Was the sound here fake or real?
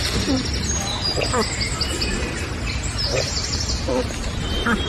real